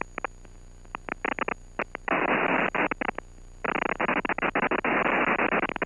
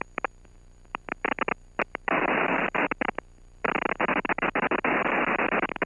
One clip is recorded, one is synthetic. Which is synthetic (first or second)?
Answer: second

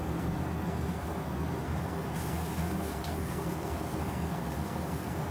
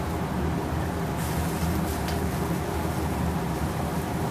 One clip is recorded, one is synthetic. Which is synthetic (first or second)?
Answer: first